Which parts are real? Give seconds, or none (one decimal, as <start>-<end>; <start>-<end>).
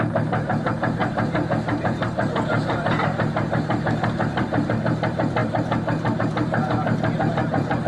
none